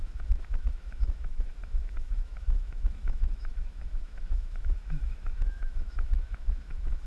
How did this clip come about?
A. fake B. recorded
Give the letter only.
A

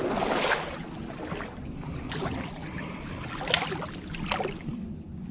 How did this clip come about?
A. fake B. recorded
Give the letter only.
B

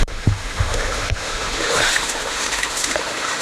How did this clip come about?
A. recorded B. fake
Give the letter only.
B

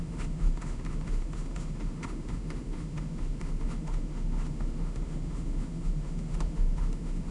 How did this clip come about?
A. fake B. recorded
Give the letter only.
A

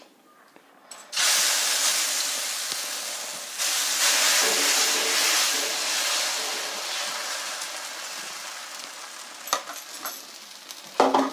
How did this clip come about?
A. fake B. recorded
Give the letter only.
B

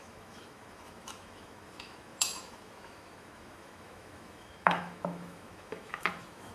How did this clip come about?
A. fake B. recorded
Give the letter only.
A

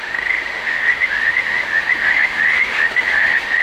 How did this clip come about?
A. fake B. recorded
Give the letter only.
A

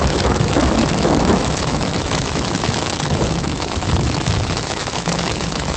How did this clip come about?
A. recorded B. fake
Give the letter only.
B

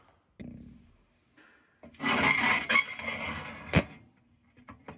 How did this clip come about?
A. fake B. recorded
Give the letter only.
B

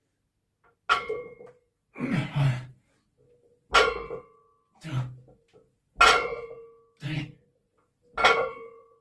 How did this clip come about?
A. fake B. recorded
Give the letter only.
B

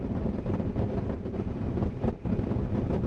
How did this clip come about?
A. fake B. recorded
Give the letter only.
B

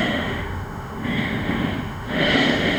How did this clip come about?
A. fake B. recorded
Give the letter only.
A